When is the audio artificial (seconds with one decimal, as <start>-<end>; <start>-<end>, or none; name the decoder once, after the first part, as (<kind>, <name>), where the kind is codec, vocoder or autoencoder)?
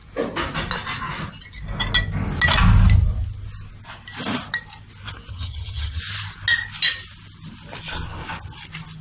5.3-6.0 (vocoder, HiFi-GAN)